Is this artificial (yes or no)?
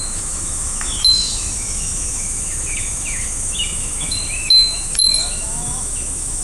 yes